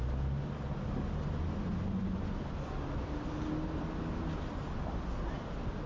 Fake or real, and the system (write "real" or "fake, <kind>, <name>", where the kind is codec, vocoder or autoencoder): real